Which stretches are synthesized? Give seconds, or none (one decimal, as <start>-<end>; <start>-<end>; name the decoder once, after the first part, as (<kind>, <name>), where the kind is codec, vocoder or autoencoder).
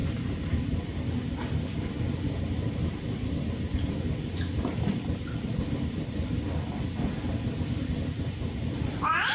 0.0-0.6 (vocoder, BigVGAN v2)